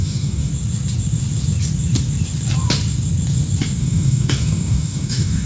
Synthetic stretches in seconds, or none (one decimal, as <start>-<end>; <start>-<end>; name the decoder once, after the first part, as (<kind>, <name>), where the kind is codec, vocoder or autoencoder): 0.0-0.5 (codec, DAC); 3.8-5.5